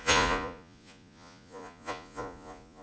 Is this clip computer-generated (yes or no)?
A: yes